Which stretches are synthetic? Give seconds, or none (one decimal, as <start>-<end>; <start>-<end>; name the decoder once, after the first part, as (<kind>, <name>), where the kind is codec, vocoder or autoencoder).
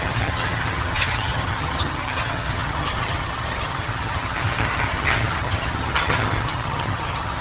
0.0-7.4 (vocoder, HiFi-GAN)